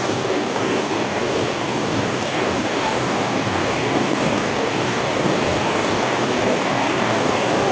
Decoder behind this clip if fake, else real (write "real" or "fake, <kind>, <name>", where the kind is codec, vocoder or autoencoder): fake, codec, DAC